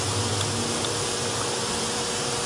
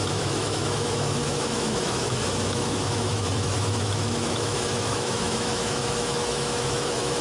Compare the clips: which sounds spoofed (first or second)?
second